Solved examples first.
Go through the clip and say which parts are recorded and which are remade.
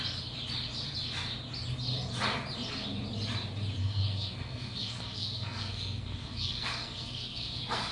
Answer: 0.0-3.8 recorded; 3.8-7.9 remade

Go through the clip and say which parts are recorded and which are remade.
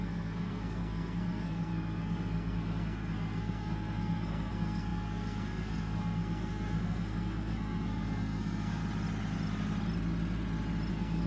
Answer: 0.0-8.8 remade; 8.8-10.9 recorded; 10.9-11.3 remade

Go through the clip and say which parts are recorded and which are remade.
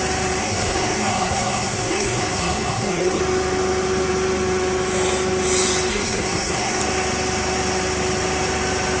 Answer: 0.0-0.4 recorded; 0.4-3.2 remade; 3.2-5.9 recorded; 5.9-6.8 remade; 6.8-9.0 recorded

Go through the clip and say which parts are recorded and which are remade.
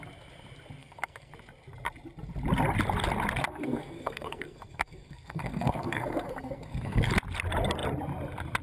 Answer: 0.0-0.8 recorded; 0.8-1.3 remade; 1.3-3.5 recorded; 3.5-7.1 remade; 7.1-8.6 recorded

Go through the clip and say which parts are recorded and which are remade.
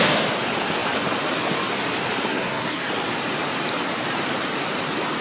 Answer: 0.0-2.3 recorded; 2.3-2.9 remade; 2.9-5.2 recorded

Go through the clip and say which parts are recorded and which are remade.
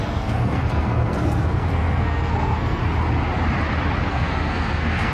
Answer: 0.0-2.8 remade; 2.8-4.1 recorded; 4.1-5.1 remade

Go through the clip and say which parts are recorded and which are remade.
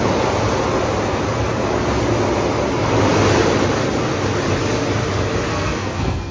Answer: 0.0-5.5 recorded; 5.5-6.3 remade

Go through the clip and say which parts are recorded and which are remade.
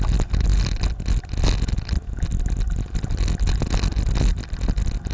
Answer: 0.0-5.1 recorded